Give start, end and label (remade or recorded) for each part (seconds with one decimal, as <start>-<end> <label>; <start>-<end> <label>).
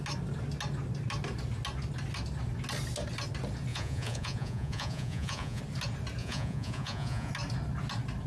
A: 0.0-3.7 recorded; 3.7-5.6 remade; 5.6-6.2 recorded; 6.2-7.3 remade; 7.3-8.3 recorded